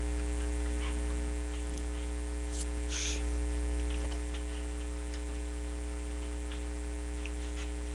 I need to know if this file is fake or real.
real